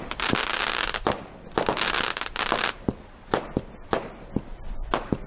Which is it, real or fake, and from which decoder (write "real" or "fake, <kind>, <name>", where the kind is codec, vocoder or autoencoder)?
real